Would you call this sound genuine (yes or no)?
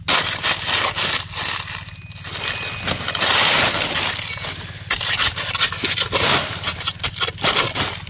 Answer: yes